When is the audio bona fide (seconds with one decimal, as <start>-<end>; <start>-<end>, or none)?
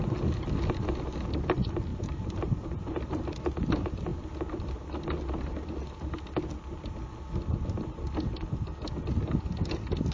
0.0-1.9; 2.9-10.1